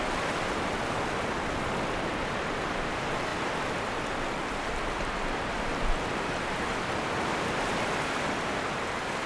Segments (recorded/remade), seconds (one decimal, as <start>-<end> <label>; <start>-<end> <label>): 0.0-9.3 recorded